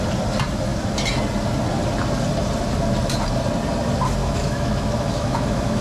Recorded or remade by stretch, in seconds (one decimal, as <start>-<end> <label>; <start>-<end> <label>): 0.0-4.2 recorded; 4.2-5.8 remade